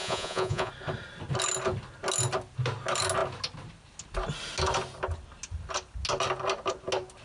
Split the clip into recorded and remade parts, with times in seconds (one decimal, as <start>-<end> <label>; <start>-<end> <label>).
0.0-0.7 remade; 0.7-7.2 recorded